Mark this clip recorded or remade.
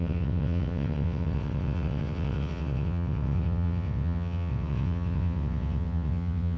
remade